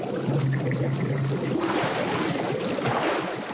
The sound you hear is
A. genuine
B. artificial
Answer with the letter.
A